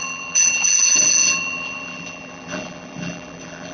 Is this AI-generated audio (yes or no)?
yes